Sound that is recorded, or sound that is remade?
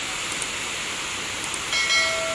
recorded